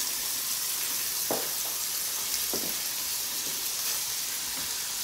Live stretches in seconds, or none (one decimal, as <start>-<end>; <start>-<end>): 0.0-3.1; 4.1-5.0